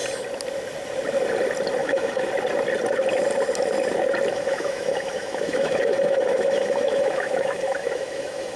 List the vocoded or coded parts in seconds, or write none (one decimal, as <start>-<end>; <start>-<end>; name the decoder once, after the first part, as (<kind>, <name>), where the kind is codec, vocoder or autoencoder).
1.8-2.3 (autoencoder, DAC-VAE); 4.3-8.6

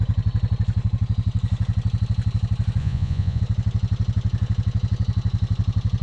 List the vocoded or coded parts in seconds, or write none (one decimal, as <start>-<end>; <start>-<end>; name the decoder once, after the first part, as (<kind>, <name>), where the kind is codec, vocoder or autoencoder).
2.8-3.4 (vocoder, Vocos)

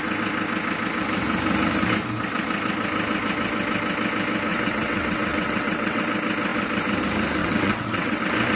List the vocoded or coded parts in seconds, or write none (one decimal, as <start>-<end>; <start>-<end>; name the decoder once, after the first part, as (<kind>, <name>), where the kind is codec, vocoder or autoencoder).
4.5-6.0 (vocoder, WaveNeXt); 7.4-8.2

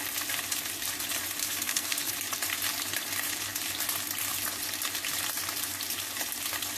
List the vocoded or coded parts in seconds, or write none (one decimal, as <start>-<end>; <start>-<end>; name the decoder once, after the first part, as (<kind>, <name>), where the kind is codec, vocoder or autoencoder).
1.4-2.1 (codec, SNAC)

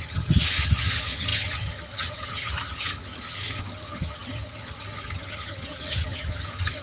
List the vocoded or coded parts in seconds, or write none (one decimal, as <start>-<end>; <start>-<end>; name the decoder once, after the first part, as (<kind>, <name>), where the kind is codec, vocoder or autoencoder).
0.0-6.8 (vocoder, HiFi-GAN)

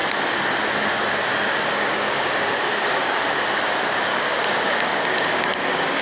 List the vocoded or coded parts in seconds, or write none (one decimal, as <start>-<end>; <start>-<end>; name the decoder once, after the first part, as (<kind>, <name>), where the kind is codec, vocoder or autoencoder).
1.3-3.2 (codec, DAC); 4.1-6.0

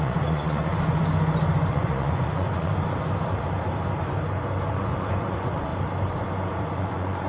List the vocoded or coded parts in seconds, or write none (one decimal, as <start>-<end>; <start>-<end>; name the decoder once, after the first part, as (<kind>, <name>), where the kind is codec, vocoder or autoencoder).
0.0-1.0 (vocoder, Vocos); 1.7-2.7; 4.7-5.7; 6.5-7.3

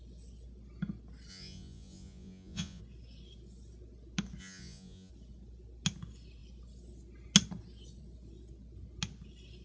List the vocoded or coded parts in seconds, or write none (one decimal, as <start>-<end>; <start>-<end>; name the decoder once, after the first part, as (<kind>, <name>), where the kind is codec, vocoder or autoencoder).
1.3-2.8 (vocoder, Vocos); 4.4-5.1